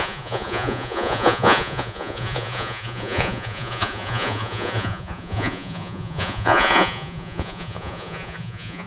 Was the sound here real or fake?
fake